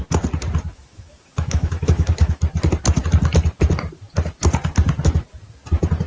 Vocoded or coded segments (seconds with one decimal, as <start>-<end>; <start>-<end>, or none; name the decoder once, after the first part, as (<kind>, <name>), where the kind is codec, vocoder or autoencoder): 0.7-2.4 (autoencoder, DAC-VAE)